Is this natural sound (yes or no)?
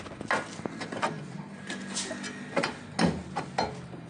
yes